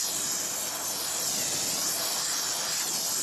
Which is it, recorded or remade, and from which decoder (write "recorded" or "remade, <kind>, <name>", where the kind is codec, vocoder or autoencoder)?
recorded